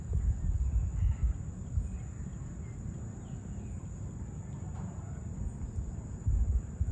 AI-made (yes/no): no